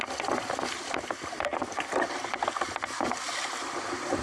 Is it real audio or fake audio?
real